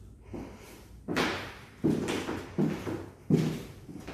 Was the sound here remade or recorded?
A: recorded